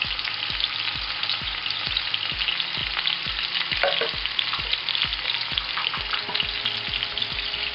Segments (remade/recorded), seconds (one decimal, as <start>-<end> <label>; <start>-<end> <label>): 0.0-1.2 recorded; 1.2-2.0 remade; 2.0-7.7 recorded